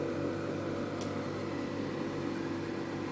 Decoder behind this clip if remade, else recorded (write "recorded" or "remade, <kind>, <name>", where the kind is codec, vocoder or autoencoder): recorded